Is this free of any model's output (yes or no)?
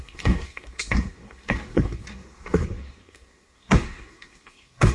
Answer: no